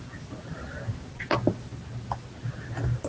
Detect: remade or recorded recorded